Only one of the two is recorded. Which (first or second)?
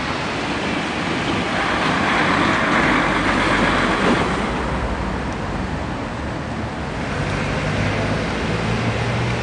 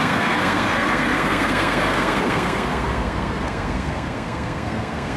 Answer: first